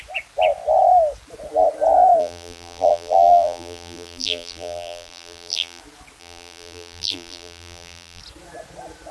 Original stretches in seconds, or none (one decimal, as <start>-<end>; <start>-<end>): 0.0-2.2; 5.8-6.2; 8.2-9.1